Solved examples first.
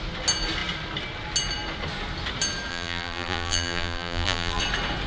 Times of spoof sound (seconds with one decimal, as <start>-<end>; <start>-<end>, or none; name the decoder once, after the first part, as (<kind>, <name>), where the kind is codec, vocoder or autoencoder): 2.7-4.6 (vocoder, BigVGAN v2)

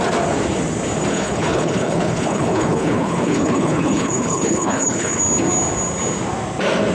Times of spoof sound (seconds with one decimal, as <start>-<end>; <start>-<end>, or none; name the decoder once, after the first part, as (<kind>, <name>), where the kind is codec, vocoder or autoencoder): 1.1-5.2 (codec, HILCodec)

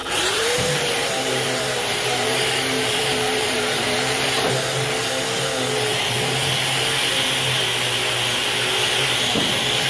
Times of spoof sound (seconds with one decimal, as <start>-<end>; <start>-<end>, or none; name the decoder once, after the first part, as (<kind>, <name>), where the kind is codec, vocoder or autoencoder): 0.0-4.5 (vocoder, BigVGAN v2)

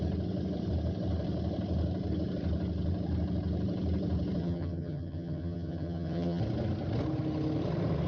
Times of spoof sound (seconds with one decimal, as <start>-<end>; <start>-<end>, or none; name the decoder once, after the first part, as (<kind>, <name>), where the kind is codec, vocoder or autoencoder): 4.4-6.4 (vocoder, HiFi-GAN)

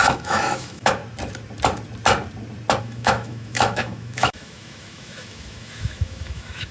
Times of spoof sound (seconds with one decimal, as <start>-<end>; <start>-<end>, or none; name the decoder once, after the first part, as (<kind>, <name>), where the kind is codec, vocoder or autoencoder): 0.0-1.0 (autoencoder, DAC-VAE); 2.8-6.7

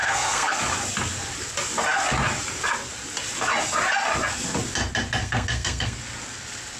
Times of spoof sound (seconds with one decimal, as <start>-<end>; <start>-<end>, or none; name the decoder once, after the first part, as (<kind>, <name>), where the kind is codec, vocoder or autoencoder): 0.0-0.6 (codec, SNAC); 5.2-6.0